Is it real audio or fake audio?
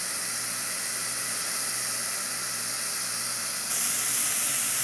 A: real